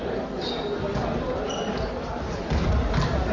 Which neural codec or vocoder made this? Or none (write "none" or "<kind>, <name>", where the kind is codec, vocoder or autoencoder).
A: none